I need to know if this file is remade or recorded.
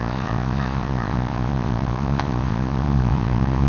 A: remade